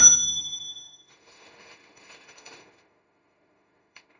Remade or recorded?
remade